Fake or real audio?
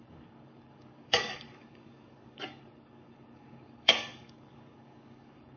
fake